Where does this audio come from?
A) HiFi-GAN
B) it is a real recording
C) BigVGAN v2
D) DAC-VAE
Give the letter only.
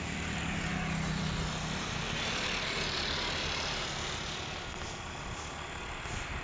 B